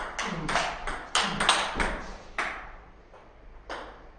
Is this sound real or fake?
real